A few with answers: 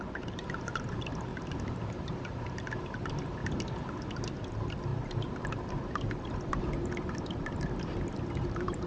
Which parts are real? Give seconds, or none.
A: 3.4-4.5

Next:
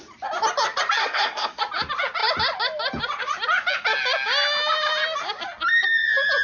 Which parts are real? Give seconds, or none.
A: 0.0-1.0; 1.6-6.4

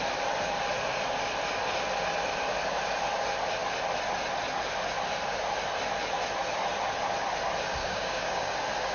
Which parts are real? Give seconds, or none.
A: 0.0-7.8; 8.5-8.9